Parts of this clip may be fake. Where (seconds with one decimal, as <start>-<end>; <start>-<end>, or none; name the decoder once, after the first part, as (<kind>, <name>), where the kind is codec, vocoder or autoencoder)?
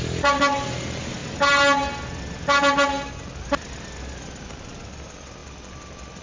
none